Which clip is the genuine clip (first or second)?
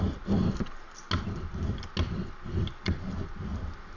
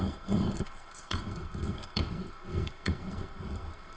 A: first